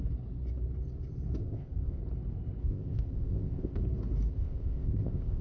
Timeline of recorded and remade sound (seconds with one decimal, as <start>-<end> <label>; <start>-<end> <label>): 0.0-1.4 recorded; 1.4-2.0 remade; 2.0-2.6 recorded; 2.6-3.8 remade; 3.8-4.3 recorded; 4.3-5.4 remade